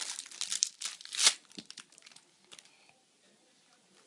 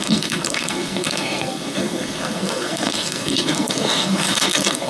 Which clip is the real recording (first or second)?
first